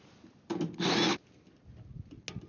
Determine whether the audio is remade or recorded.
recorded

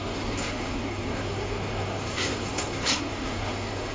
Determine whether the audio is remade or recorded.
remade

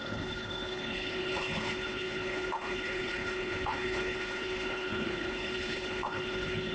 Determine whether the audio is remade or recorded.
remade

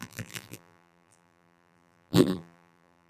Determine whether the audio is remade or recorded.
remade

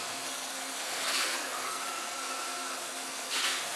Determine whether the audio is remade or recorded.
remade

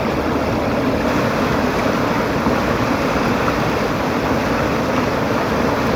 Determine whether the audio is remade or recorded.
recorded